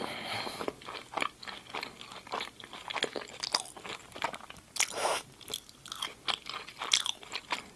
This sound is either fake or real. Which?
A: real